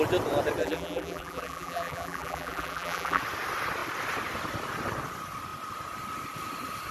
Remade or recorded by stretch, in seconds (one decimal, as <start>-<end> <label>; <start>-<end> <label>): 0.0-0.6 recorded; 0.6-3.2 remade; 3.2-6.9 recorded